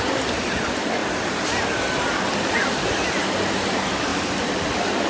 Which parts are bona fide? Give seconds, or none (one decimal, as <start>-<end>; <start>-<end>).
0.0-5.1